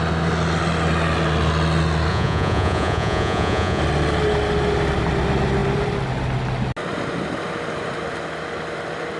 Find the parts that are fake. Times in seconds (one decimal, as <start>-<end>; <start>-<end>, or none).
2.1-3.8